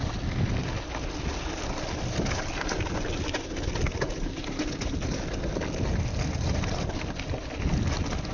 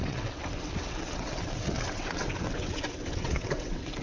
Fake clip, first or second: second